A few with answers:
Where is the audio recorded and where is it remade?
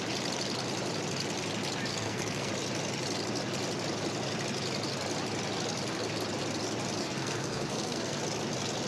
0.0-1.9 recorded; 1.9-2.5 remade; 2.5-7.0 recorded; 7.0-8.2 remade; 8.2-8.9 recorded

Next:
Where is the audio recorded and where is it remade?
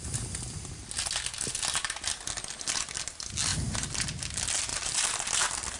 0.0-5.8 recorded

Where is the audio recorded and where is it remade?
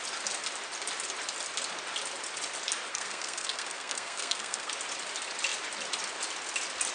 0.0-2.9 recorded; 2.9-4.7 remade; 4.7-6.9 recorded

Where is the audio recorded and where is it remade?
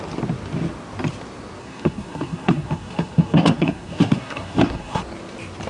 0.0-1.6 recorded; 1.6-5.0 remade; 5.0-5.7 recorded